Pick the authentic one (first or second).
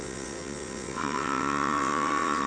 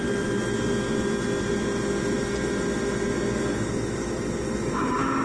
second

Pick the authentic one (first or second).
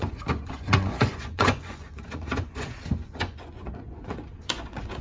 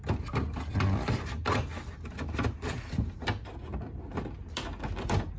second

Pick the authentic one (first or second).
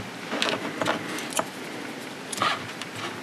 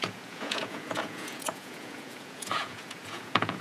first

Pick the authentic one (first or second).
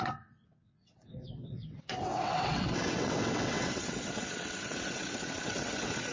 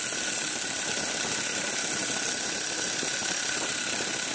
second